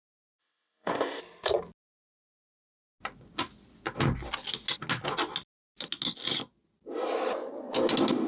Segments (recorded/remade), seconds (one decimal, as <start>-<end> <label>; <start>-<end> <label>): 0.0-0.4 recorded; 0.4-1.2 remade; 1.2-8.3 recorded